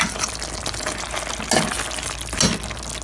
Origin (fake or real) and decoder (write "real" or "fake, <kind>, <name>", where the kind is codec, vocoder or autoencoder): real